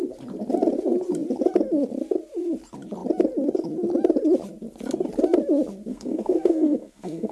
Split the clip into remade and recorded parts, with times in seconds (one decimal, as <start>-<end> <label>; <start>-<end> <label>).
0.0-5.9 recorded; 5.9-7.3 remade